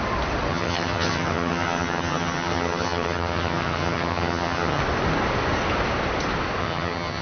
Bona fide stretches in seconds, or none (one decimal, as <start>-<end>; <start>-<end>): 0.0-0.5; 4.8-6.6